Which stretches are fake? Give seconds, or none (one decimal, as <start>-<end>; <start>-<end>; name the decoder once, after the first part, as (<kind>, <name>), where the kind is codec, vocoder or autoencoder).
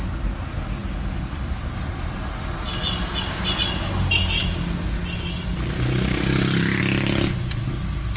none